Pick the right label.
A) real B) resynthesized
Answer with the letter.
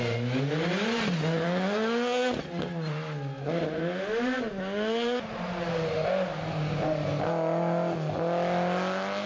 A